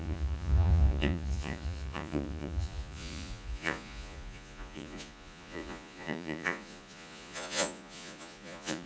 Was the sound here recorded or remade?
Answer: remade